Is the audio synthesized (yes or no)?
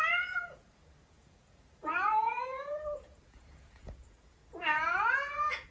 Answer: yes